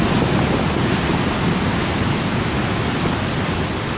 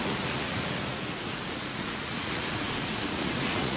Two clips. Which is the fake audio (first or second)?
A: second